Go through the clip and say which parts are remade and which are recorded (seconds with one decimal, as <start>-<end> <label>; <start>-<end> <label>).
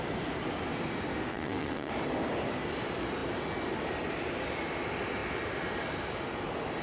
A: 0.0-1.3 recorded; 1.3-1.9 remade; 1.9-6.8 recorded